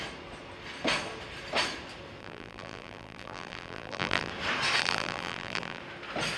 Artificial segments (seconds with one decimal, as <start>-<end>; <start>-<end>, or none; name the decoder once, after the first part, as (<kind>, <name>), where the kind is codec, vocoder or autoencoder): 2.2-4.3 (vocoder, BigVGAN v2); 4.8-5.8